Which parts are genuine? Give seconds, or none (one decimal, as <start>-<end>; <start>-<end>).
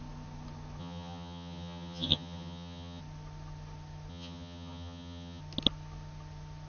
0.0-0.8; 3.0-4.1; 5.4-6.7